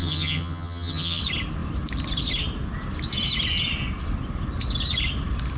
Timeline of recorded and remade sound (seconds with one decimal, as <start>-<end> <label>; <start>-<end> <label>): 0.0-1.2 remade; 1.2-5.6 recorded